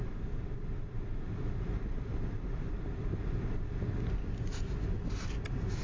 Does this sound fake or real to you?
real